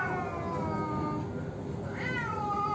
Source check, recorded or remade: recorded